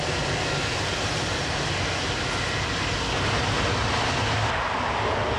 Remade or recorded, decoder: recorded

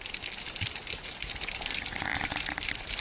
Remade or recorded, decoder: recorded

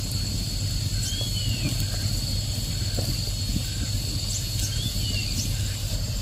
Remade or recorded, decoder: recorded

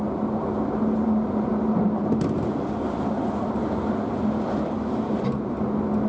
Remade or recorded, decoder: recorded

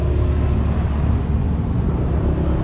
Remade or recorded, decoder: recorded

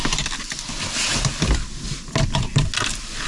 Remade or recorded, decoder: recorded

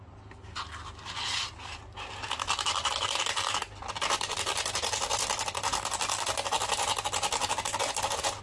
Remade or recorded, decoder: recorded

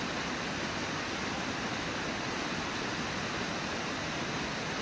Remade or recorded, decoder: recorded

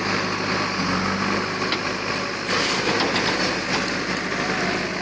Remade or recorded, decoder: recorded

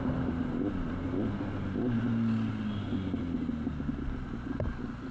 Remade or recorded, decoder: recorded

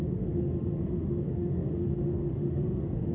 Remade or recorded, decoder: remade, autoencoder, DAC-VAE